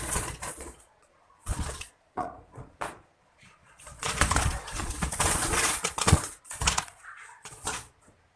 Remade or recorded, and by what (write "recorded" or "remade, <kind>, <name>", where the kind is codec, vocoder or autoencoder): remade, vocoder, Vocos